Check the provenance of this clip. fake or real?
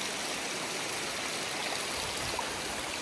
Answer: real